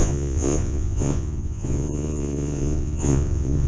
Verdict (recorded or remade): remade